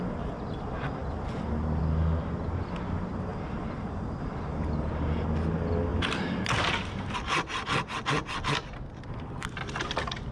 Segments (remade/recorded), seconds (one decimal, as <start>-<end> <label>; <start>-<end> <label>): 0.0-3.3 recorded; 3.3-4.9 remade; 4.9-10.3 recorded